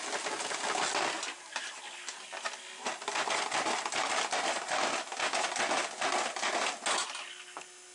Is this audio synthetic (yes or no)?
no